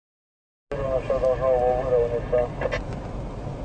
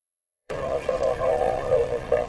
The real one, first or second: first